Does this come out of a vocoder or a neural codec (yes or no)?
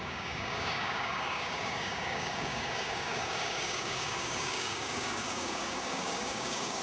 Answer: yes